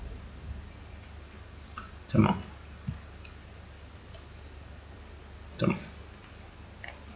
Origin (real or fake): real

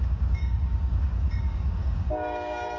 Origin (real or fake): fake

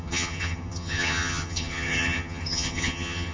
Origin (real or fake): fake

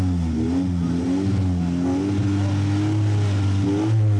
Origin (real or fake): real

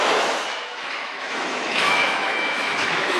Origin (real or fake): fake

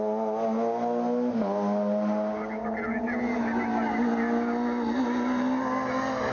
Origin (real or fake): real